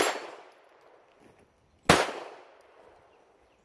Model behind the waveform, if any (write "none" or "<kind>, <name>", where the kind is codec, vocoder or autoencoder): none